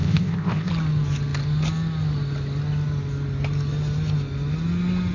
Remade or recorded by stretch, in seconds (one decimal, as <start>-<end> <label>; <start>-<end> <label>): 0.0-0.7 remade; 0.7-5.1 recorded